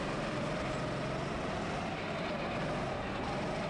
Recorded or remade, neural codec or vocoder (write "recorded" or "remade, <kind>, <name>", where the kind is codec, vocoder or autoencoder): recorded